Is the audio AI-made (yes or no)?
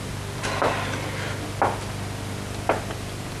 no